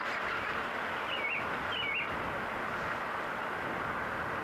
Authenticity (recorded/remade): recorded